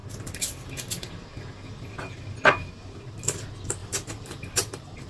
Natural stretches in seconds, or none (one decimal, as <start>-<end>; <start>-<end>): 0.0-3.8